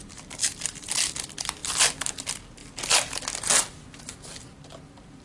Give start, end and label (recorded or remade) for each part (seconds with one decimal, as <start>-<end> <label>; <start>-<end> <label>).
0.0-5.2 recorded